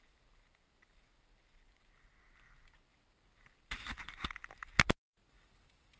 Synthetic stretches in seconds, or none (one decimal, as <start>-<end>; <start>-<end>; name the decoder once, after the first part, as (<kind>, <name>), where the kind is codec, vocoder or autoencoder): none